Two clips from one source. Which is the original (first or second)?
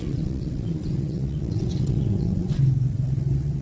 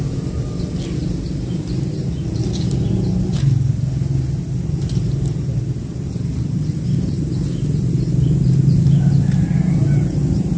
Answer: second